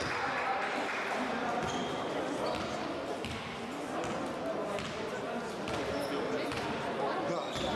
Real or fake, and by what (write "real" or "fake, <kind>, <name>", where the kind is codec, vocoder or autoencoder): real